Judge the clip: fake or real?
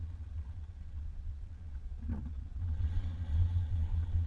fake